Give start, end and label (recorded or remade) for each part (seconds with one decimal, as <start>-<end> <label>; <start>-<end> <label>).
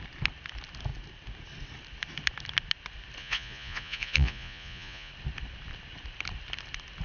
0.0-3.2 recorded; 3.2-5.1 remade; 5.1-7.0 recorded